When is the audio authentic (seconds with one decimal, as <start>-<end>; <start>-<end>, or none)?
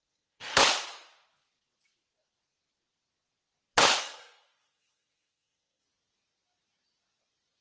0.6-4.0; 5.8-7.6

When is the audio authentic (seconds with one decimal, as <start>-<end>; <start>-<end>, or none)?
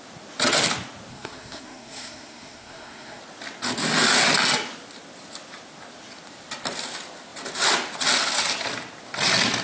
0.0-1.1; 3.2-9.6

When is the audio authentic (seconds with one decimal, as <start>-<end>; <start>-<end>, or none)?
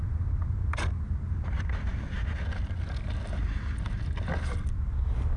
0.0-5.4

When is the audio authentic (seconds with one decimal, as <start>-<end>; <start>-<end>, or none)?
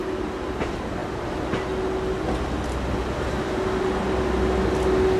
0.0-5.2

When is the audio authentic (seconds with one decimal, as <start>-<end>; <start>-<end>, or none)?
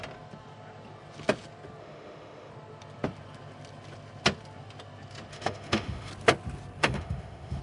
0.0-1.8; 2.5-5.3; 6.1-6.8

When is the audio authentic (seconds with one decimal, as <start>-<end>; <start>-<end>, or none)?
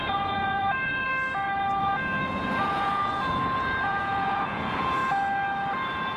1.1-1.8; 5.0-6.2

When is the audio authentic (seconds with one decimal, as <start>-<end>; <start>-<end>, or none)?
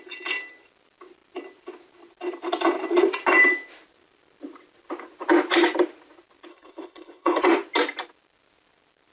0.0-6.5; 7.4-9.1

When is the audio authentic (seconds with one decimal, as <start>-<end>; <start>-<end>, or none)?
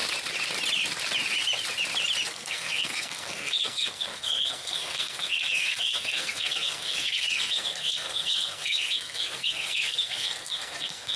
0.0-2.3